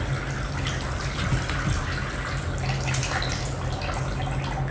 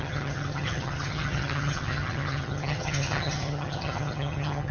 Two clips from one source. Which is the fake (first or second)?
second